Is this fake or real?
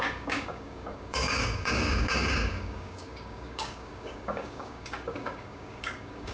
fake